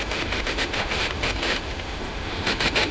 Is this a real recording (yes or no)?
no